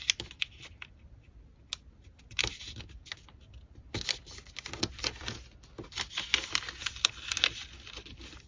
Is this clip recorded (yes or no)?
yes